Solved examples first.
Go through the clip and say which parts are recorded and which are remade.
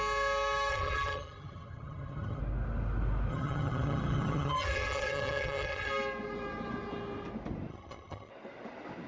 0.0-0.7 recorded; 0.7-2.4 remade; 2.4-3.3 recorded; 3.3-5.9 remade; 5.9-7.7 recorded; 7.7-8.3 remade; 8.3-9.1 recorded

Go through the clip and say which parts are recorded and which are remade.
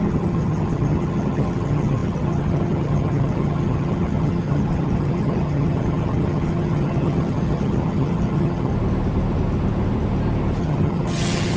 0.0-8.7 remade; 8.7-10.6 recorded; 10.6-11.6 remade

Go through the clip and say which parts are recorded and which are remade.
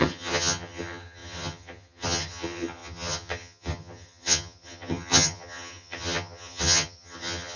0.0-7.6 remade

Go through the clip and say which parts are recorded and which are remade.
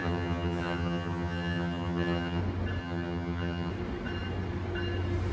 0.0-2.4 remade; 2.4-2.8 recorded; 2.8-3.7 remade; 3.7-5.3 recorded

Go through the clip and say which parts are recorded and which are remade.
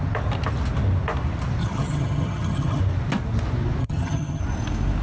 0.0-1.6 recorded; 1.6-2.8 remade; 2.8-3.8 recorded; 3.8-4.4 remade; 4.4-5.0 recorded